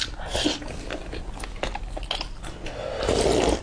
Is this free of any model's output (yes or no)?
yes